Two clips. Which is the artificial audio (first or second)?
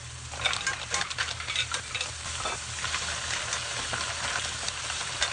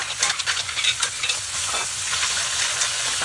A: second